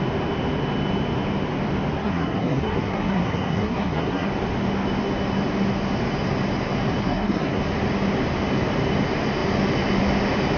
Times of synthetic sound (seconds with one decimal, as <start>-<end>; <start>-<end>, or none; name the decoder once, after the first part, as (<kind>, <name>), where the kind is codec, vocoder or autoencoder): 2.0-4.3 (codec, SNAC); 7.0-7.6

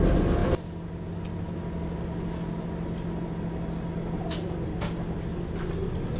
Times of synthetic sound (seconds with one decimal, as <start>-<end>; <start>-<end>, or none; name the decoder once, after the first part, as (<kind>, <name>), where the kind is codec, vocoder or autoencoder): none

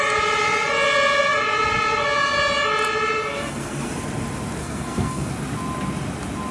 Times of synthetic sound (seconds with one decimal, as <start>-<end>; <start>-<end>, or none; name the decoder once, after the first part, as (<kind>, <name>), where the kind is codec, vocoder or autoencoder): 3.3-3.9 (codec, SNAC); 4.6-5.3